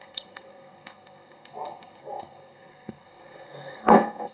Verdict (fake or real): fake